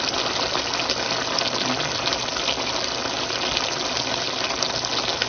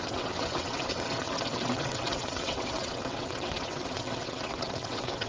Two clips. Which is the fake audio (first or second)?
second